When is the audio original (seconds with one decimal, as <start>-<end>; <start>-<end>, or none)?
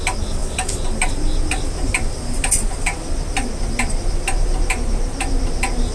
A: 0.0-5.9